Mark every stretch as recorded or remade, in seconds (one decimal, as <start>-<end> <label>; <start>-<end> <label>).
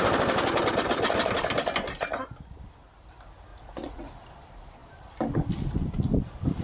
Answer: 0.0-3.5 recorded; 3.5-4.1 remade; 4.1-6.6 recorded